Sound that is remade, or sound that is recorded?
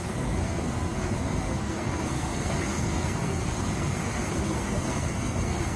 remade